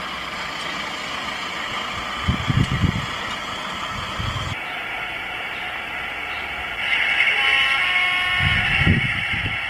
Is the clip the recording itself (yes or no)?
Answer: yes